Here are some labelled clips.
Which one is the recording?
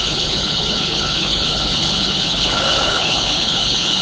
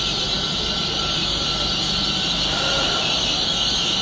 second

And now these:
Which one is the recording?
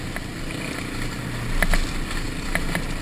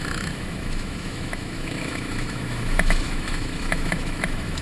first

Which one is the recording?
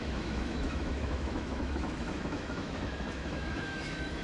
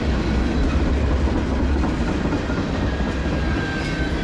second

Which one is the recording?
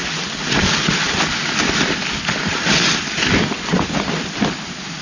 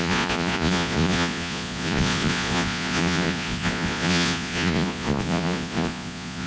first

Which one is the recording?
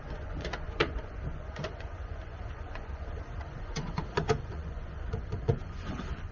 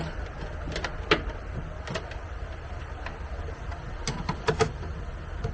second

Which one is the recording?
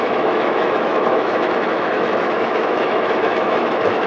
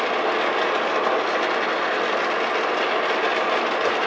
second